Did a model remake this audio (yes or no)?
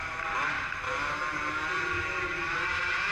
no